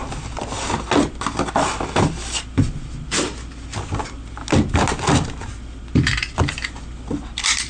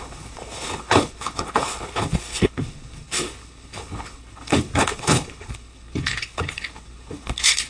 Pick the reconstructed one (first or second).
second